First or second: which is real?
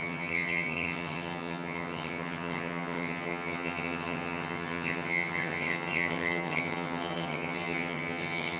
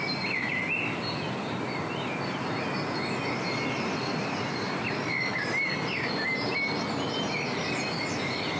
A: second